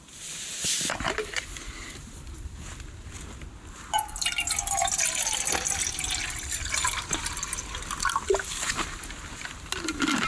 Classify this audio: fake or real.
real